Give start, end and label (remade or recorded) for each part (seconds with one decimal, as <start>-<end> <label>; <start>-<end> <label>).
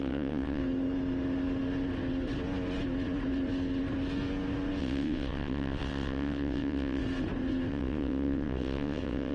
0.0-0.6 remade; 0.6-4.8 recorded; 4.8-7.0 remade; 7.0-7.7 recorded; 7.7-9.3 remade